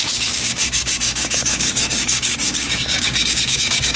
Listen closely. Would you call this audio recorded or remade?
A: remade